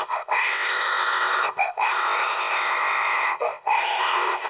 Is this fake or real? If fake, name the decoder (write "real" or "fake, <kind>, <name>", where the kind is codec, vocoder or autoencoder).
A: fake, codec, ZipCodec